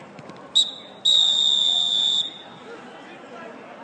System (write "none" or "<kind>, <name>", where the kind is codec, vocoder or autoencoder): none